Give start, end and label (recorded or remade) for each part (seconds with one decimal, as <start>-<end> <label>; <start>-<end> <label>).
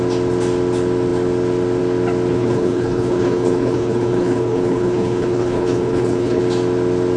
0.0-2.3 recorded; 2.3-6.4 remade; 6.4-7.2 recorded